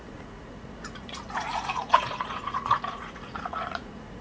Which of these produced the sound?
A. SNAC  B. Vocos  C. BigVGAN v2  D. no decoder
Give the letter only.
B